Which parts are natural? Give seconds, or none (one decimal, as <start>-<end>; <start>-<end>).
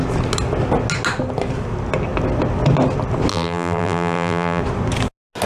0.0-3.3; 4.6-5.5